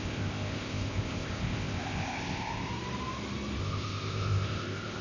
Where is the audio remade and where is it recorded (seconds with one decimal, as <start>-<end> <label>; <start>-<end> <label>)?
0.0-2.7 remade; 2.7-3.6 recorded; 3.6-5.0 remade